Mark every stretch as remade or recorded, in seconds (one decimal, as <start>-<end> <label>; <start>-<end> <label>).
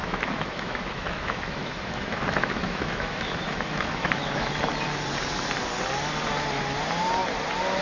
0.0-4.5 remade; 4.5-7.8 recorded